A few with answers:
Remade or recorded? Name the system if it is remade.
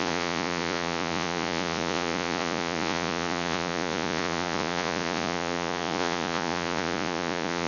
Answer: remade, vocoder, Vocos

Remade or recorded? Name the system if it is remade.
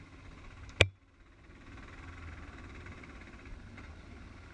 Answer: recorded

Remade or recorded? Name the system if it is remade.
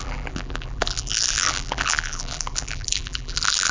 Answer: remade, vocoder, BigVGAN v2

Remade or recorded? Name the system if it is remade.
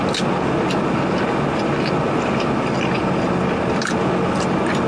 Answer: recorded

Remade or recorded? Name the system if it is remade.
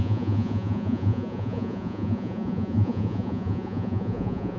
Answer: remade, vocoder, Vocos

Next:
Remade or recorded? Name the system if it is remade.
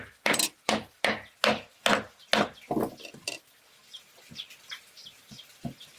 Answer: recorded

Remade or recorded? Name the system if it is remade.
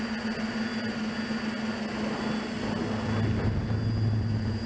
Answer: recorded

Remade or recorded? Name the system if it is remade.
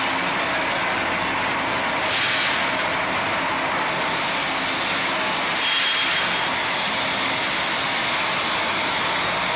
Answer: recorded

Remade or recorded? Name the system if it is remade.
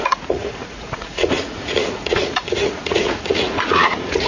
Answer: remade, vocoder, Vocos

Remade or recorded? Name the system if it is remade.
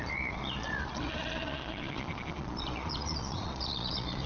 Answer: remade, vocoder, Vocos